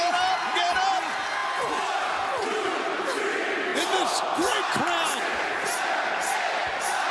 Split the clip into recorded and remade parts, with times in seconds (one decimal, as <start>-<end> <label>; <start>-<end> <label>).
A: 0.0-7.1 recorded